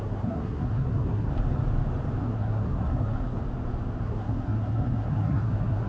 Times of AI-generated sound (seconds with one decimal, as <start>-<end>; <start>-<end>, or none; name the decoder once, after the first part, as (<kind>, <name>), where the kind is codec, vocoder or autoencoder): 0.0-1.3 (codec, SNAC); 2.2-3.4; 4.0-5.9